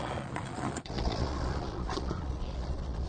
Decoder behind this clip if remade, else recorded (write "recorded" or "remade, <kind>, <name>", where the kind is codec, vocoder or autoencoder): remade, vocoder, Vocos